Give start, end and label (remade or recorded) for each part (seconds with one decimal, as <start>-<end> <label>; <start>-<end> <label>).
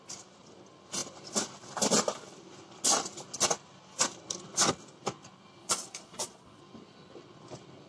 0.0-5.6 recorded; 5.6-6.6 remade; 6.6-7.9 recorded